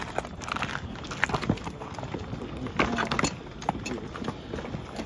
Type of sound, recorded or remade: recorded